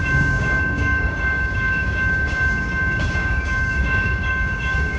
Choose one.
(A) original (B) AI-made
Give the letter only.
B